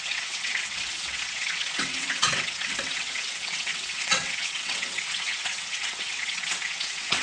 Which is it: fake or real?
fake